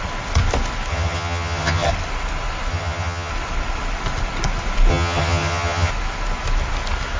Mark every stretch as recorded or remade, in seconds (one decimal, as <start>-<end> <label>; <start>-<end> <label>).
0.0-0.9 recorded; 0.9-1.9 remade; 1.9-2.7 recorded; 2.7-3.3 remade; 3.3-4.9 recorded; 4.9-5.9 remade; 5.9-7.2 recorded